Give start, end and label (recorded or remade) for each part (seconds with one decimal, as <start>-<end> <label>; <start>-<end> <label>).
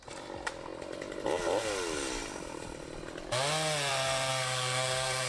0.0-4.3 recorded; 4.3-5.3 remade